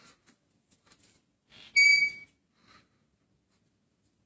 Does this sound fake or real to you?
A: real